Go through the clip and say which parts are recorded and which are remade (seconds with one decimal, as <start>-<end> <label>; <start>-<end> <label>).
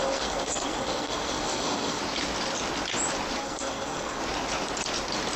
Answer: 0.0-2.0 remade; 2.0-3.4 recorded; 3.4-4.2 remade; 4.2-5.4 recorded